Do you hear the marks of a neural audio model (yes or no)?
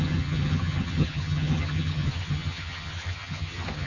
yes